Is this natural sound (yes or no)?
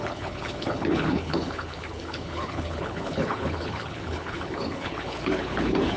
no